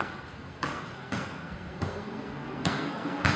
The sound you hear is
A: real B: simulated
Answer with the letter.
B